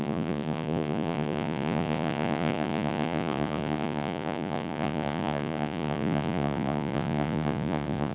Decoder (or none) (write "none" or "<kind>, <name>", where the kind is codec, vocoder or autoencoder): vocoder, Vocos